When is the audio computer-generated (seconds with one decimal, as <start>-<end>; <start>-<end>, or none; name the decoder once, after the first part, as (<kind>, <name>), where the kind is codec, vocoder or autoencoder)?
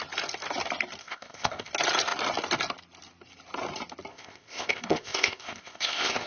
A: 1.0-1.7 (codec, ZipCodec); 4.1-6.3